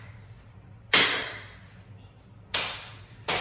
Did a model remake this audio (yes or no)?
no